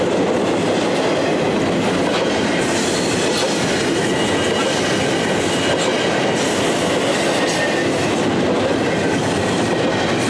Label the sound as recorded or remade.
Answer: recorded